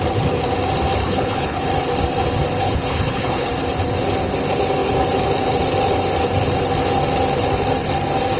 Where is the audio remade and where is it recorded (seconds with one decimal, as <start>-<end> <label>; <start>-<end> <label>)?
0.0-1.0 recorded; 1.0-1.6 remade; 1.6-2.6 recorded; 2.6-3.5 remade; 3.5-8.4 recorded